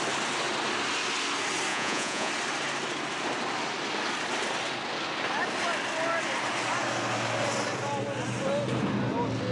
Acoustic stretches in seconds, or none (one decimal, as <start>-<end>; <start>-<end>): 0.0-1.7; 2.3-9.5